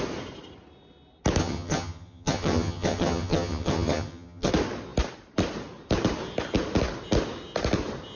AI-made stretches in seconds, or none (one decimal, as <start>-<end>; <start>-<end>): 1.4-4.5